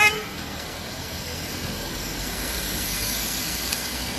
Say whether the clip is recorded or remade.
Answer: remade